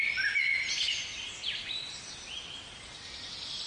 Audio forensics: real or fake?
real